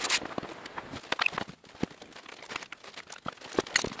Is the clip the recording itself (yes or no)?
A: yes